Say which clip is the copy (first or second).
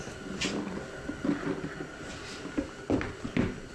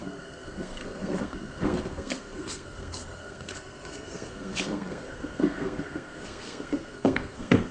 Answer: second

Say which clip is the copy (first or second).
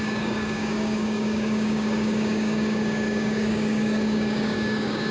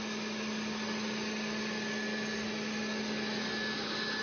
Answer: first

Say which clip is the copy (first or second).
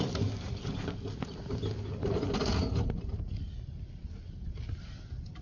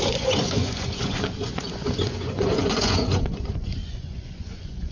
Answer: second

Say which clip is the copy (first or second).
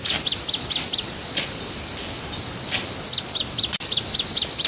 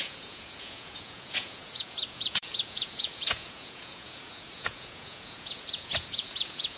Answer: second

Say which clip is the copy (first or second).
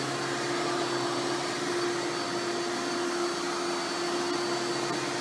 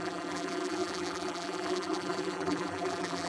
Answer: second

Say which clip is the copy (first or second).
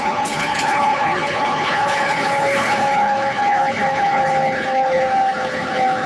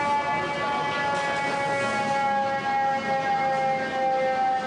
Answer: first